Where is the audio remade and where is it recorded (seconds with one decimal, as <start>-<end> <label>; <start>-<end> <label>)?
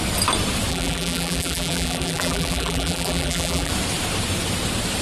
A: 0.0-0.7 recorded; 0.7-3.7 remade; 3.7-5.0 recorded